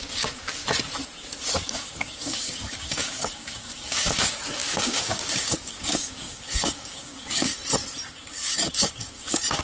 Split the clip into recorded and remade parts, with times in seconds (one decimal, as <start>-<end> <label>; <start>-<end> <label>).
0.0-0.6 remade; 0.6-1.5 recorded; 1.5-7.5 remade; 7.5-8.1 recorded; 8.1-9.6 remade